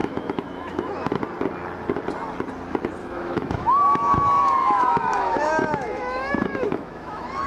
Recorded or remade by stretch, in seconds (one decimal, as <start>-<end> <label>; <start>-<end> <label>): 0.0-1.2 remade; 1.2-3.0 recorded; 3.0-7.5 remade